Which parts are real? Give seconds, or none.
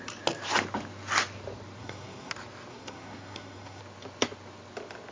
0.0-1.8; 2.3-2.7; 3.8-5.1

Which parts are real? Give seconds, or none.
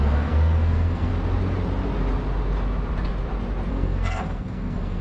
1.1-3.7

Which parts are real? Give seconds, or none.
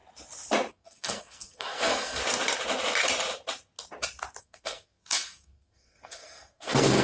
0.0-0.7; 2.2-4.4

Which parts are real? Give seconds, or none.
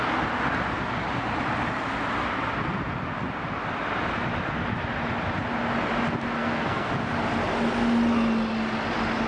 0.0-6.4; 6.9-9.3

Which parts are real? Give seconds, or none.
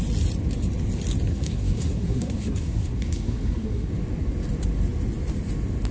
0.0-1.3; 3.9-5.9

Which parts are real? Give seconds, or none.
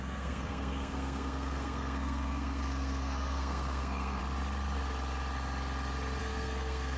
4.2-6.2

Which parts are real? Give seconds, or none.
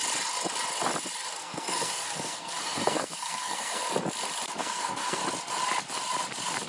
0.0-1.4; 3.8-4.6; 5.2-6.7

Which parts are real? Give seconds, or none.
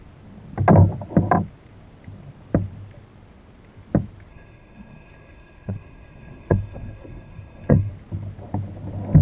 0.0-4.3; 7.9-9.2